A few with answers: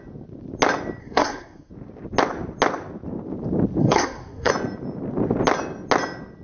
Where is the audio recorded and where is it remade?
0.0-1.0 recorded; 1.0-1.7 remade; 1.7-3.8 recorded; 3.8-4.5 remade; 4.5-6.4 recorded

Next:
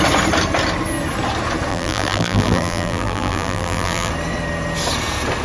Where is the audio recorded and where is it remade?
0.0-1.7 recorded; 1.7-4.1 remade; 4.1-5.4 recorded

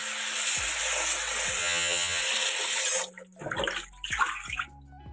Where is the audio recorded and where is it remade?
0.0-1.6 recorded; 1.6-2.2 remade; 2.2-5.1 recorded